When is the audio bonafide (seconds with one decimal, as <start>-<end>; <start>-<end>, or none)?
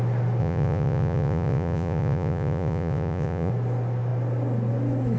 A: 0.0-0.4; 3.5-5.2